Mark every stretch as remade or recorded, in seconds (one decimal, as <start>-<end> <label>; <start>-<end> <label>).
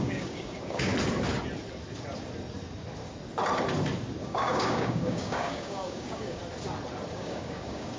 0.0-0.9 remade; 0.9-4.2 recorded; 4.2-6.4 remade; 6.4-7.1 recorded; 7.1-8.0 remade